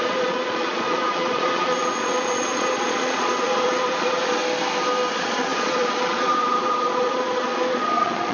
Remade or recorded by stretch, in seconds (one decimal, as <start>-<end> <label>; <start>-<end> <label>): 0.0-4.4 remade; 4.4-5.1 recorded; 5.1-8.3 remade